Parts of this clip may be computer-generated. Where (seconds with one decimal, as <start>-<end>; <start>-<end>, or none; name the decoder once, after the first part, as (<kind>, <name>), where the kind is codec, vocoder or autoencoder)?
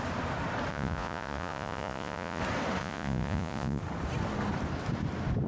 0.7-2.4 (vocoder, Vocos); 2.8-3.8